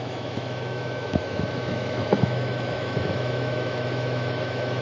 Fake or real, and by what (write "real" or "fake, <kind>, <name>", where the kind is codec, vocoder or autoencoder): fake, autoencoder, DAC-VAE